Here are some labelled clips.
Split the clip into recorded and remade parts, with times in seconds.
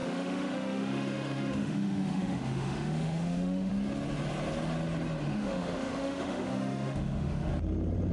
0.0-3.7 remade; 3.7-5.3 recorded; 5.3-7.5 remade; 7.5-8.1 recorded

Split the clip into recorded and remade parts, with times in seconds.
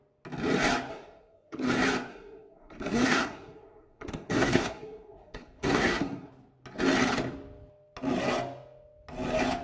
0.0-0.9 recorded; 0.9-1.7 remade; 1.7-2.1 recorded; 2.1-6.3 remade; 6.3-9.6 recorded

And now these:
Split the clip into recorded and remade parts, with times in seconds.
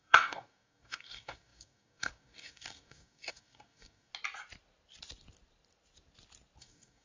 0.0-4.1 remade; 4.1-6.6 recorded; 6.6-7.0 remade